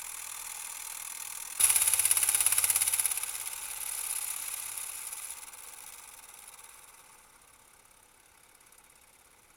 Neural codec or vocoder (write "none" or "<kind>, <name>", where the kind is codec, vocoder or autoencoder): none